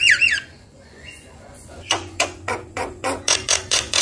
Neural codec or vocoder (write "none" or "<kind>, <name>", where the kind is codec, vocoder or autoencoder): vocoder, Vocos